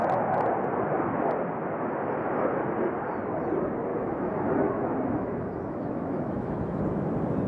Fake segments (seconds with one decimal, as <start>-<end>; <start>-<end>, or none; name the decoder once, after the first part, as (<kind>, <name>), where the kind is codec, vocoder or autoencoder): 3.9-6.8 (autoencoder, DAC-VAE)